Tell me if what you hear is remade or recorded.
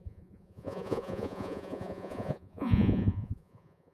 remade